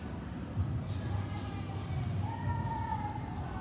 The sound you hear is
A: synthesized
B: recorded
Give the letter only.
B